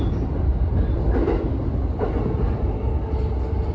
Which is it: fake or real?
real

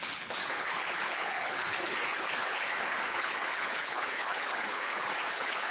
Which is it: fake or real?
fake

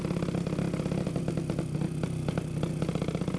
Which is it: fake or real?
real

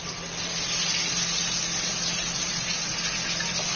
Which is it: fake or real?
real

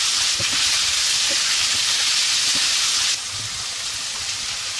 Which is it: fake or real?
real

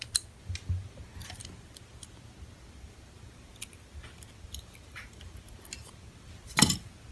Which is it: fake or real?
real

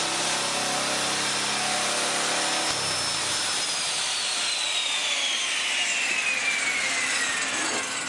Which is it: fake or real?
real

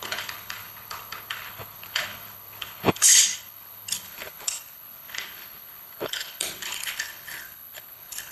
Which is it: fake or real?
fake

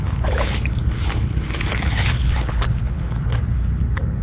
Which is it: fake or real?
fake